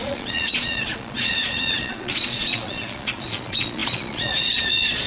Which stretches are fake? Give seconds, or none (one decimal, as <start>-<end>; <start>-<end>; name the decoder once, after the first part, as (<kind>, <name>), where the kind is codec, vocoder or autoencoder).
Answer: 0.0-5.1 (vocoder, Vocos)